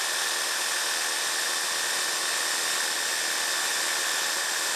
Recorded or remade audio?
recorded